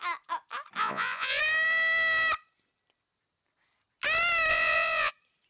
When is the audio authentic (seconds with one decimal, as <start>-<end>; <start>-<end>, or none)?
0.0-0.8; 1.4-4.5; 5.1-5.5